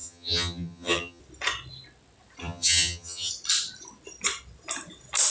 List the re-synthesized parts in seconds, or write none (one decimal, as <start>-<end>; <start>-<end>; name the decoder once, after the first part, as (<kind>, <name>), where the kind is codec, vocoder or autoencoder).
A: 0.0-1.2 (vocoder, HiFi-GAN); 2.4-3.3